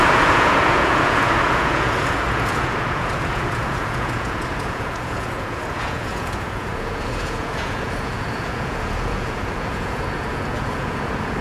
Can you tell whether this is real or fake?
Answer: fake